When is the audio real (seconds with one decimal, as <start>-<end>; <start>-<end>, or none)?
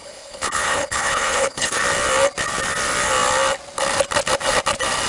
1.8-5.1